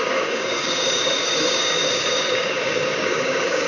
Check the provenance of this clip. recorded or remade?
remade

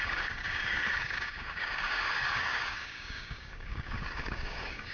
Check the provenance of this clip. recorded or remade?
remade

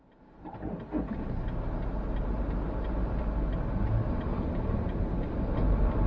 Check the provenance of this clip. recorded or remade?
recorded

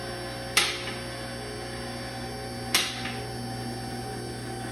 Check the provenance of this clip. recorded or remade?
recorded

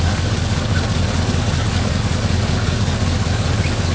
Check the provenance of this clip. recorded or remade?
remade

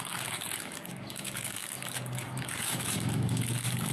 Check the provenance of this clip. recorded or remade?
remade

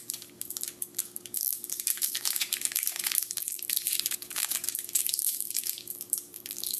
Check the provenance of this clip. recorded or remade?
remade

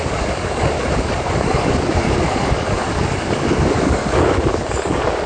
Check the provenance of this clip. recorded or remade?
remade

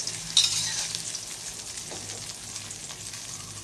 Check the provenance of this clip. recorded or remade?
recorded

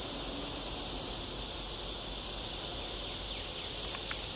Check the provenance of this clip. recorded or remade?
recorded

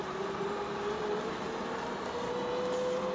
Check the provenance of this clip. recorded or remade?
recorded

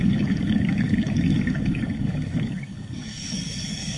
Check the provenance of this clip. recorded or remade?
remade